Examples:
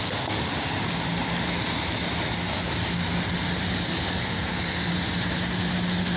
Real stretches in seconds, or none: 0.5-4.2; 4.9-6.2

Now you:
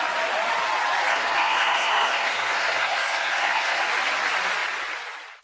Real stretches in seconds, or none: 0.0-1.1; 3.8-5.4

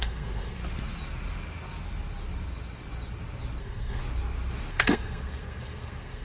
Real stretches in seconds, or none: 0.6-3.6; 4.0-4.7

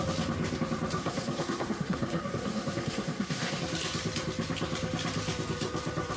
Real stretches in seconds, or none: 0.0-1.0; 3.6-6.2

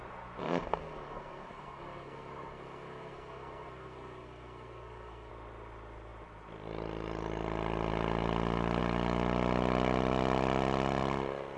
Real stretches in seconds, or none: 0.0-0.4; 5.3-11.6

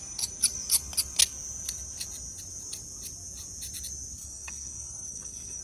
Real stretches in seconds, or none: 0.0-4.2